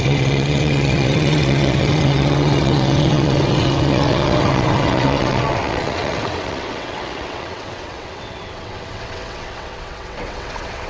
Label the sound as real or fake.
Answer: fake